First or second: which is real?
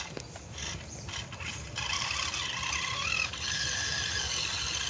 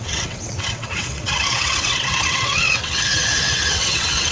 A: first